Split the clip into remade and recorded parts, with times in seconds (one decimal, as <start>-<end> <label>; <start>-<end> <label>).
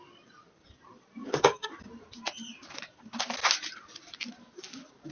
0.0-1.2 recorded; 1.2-1.8 remade; 1.8-5.1 recorded